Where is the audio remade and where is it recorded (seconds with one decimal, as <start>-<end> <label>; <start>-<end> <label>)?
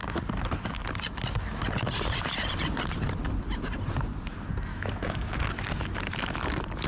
0.0-4.7 recorded; 4.7-5.4 remade; 5.4-6.9 recorded